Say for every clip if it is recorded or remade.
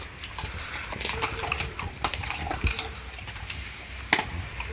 remade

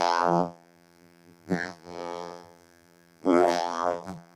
remade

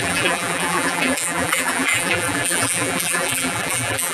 remade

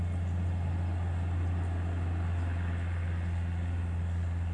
recorded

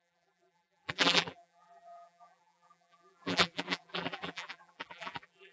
remade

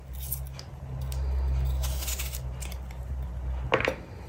recorded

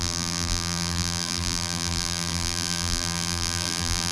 remade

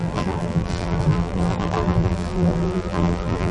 remade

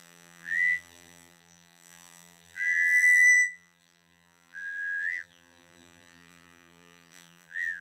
remade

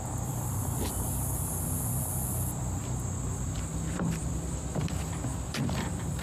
remade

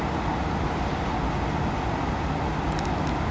recorded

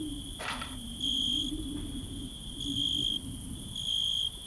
remade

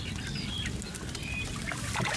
recorded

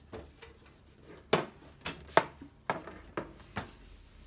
recorded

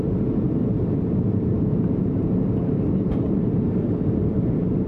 remade